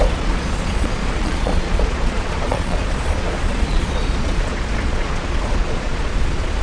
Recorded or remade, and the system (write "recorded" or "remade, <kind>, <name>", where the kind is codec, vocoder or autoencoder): remade, vocoder, Vocos